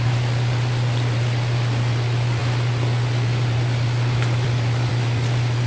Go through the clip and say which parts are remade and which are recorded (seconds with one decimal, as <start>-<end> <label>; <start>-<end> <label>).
0.0-5.7 recorded